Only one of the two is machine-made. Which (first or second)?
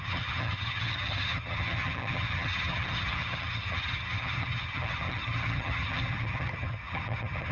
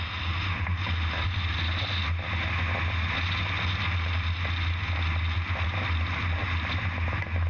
first